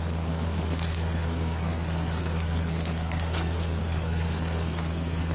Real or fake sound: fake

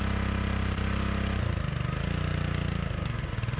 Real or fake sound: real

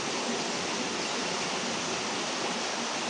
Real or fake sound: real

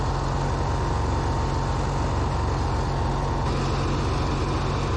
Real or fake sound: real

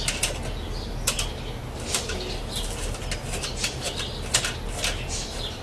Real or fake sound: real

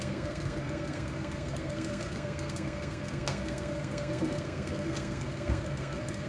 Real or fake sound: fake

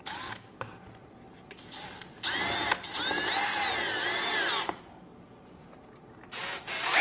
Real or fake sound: real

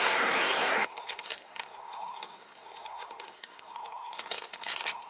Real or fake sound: fake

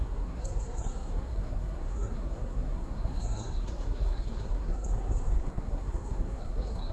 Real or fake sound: fake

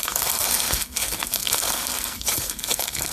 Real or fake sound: fake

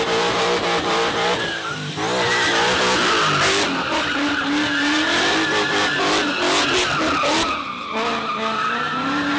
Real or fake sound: real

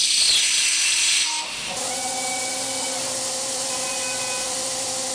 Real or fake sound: real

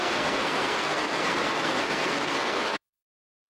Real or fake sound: fake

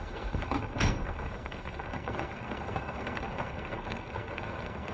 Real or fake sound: fake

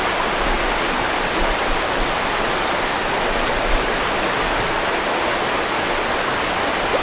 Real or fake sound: real